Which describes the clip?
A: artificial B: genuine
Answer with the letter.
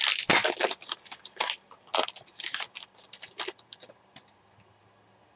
B